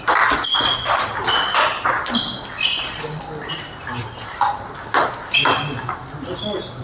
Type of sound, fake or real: real